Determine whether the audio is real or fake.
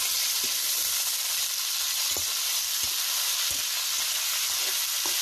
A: real